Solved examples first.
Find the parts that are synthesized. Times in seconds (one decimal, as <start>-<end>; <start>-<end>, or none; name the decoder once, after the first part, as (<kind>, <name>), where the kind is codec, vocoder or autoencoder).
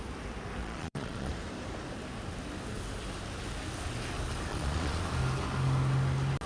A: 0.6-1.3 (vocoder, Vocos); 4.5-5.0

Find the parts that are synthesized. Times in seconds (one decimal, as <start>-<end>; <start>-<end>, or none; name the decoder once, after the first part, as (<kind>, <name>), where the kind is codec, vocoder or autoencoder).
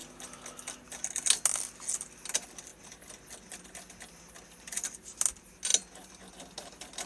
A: none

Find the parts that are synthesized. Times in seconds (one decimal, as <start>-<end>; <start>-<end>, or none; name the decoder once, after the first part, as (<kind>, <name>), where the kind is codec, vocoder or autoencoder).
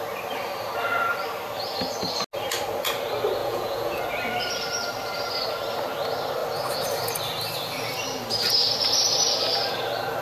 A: 3.4-4.0 (vocoder, Vocos)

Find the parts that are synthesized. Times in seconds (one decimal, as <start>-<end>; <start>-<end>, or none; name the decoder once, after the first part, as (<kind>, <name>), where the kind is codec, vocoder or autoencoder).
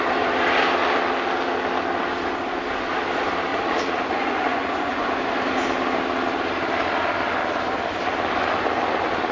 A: 3.5-5.1 (vocoder, Vocos)